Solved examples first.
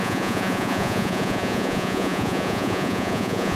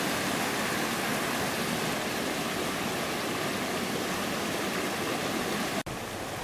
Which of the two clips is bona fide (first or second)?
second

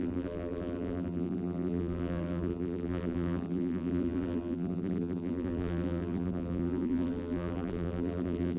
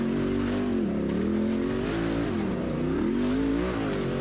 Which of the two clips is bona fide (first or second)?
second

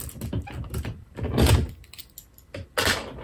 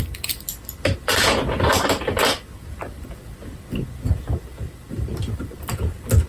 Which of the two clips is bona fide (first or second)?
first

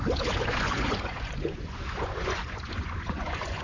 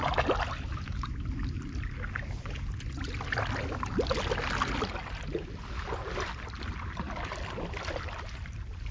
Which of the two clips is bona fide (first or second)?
second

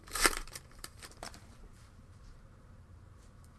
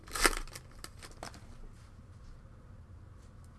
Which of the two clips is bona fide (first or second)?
second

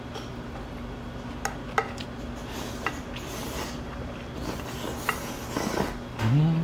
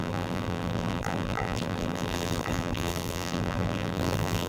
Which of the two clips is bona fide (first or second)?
first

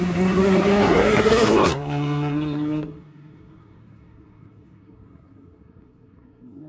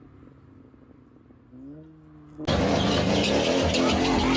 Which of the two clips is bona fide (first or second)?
second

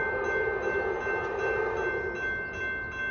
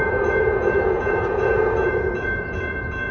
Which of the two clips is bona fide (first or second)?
first